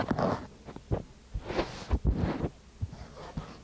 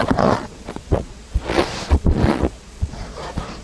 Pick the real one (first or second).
first